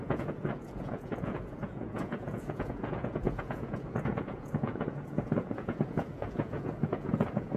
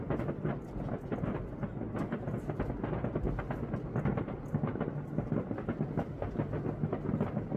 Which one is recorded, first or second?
second